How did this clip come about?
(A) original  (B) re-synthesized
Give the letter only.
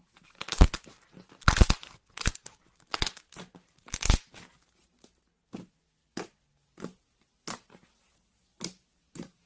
A